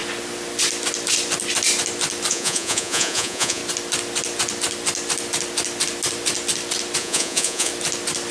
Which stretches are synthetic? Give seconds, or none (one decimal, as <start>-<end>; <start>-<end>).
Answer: 2.3-3.6; 7.0-7.7